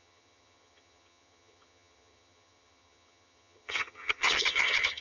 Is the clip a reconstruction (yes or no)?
yes